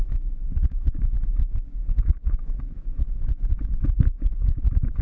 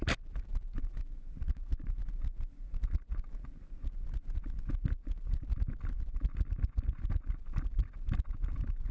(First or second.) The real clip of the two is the second